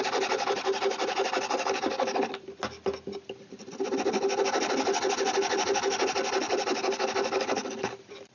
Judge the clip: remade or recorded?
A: recorded